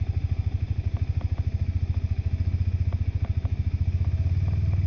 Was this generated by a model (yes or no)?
no